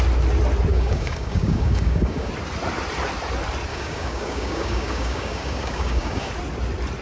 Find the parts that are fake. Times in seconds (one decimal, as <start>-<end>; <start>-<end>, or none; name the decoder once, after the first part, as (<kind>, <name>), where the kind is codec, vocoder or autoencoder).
0.7-2.3 (codec, DAC); 3.7-6.3